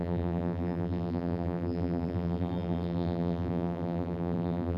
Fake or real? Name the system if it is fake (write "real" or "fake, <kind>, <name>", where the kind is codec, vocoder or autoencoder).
fake, vocoder, BigVGAN v2